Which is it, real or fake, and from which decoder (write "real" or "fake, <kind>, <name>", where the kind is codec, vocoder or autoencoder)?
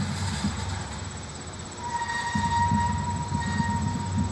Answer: real